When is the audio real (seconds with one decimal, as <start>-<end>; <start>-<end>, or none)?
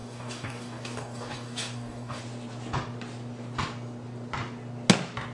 2.2-5.3